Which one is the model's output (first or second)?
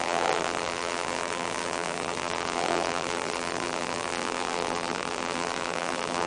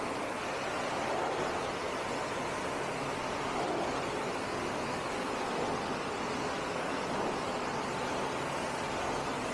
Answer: first